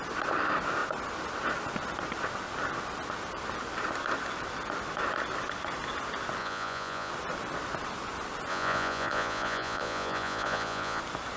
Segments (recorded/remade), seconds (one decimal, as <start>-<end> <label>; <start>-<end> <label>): 0.0-6.4 recorded; 6.4-7.1 remade; 7.1-8.5 recorded; 8.5-11.0 remade; 11.0-11.4 recorded